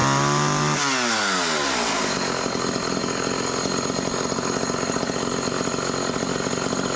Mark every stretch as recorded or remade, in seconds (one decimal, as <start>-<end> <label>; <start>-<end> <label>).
0.0-7.0 recorded